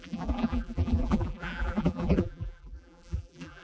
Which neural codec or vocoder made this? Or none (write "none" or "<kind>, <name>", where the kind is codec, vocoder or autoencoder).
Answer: vocoder, BigVGAN v2